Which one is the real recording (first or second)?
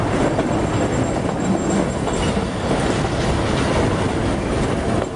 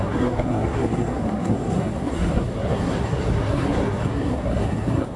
first